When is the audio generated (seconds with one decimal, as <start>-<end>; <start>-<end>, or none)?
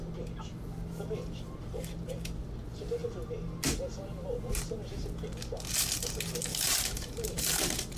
6.5-8.0